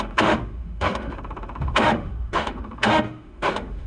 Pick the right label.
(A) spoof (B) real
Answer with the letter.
A